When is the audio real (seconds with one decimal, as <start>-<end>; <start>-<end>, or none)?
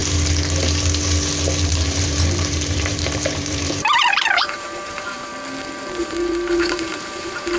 0.0-1.7; 5.3-6.0